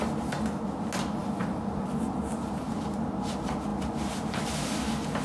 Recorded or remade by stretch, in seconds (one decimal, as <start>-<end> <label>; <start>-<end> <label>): 0.0-5.2 recorded